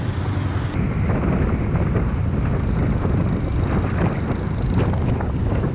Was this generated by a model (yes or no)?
no